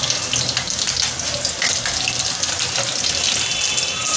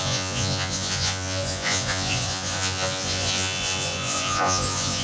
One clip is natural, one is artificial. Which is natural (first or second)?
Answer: first